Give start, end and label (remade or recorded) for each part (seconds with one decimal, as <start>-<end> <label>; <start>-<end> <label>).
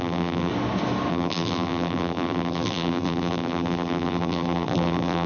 0.0-0.5 remade; 0.5-1.1 recorded; 1.1-5.3 remade